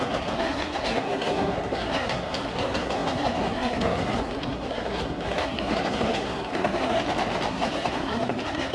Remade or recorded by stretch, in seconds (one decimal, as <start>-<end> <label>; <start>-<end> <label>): 0.0-7.0 remade; 7.0-7.5 recorded; 7.5-8.7 remade